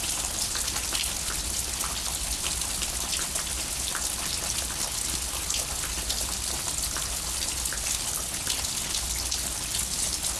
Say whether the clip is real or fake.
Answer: real